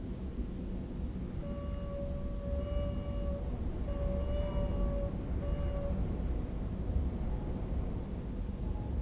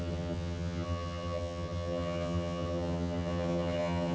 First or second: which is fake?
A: second